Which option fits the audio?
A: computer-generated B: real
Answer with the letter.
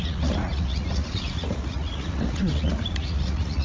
A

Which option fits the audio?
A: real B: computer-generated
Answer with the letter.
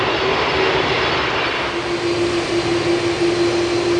A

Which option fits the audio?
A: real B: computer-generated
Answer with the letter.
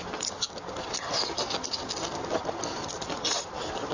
A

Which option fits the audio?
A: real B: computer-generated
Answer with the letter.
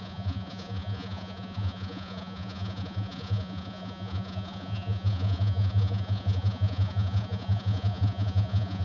B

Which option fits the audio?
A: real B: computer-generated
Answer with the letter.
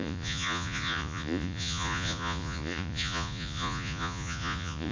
B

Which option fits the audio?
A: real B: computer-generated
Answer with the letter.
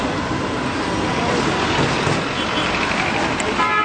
A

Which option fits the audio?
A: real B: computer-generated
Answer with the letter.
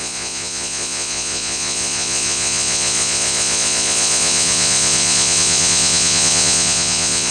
B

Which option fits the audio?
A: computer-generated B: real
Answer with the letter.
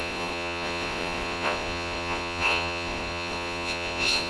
A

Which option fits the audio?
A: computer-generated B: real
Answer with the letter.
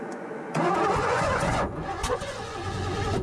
A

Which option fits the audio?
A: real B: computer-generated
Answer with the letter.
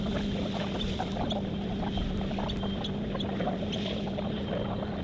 A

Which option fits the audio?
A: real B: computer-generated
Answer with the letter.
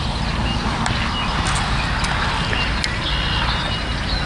A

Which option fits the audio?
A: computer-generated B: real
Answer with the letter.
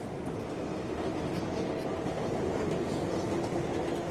B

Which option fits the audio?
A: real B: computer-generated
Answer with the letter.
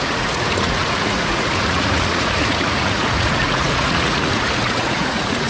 B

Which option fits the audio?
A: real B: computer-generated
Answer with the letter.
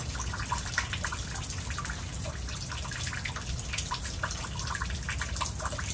A